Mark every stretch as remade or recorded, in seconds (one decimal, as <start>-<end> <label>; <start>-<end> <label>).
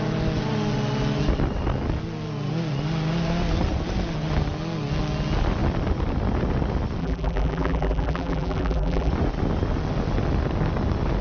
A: 0.0-7.0 recorded; 7.0-9.1 remade; 9.1-11.2 recorded